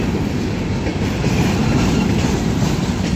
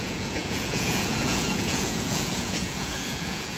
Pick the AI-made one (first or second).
second